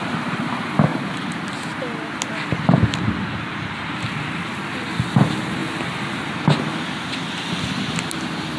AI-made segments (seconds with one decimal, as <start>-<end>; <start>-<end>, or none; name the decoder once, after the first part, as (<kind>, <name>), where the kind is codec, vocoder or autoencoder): 0.9-1.5 (vocoder, BigVGAN v2)